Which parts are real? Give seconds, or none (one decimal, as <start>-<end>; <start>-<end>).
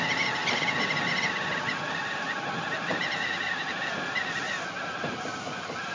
0.0-5.9